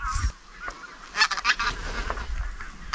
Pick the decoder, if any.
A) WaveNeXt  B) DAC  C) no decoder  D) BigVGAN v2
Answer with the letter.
C